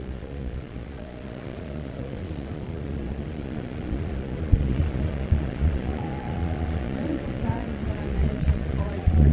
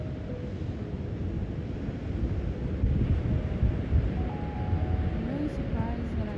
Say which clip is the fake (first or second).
first